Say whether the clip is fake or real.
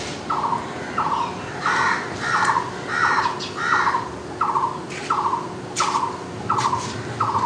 real